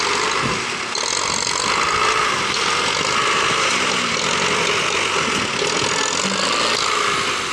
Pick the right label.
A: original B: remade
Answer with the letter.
A